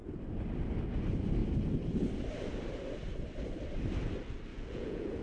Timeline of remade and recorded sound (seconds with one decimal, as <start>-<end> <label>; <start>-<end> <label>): 0.0-4.5 recorded; 4.5-5.2 remade